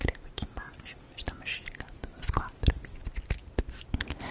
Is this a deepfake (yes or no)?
no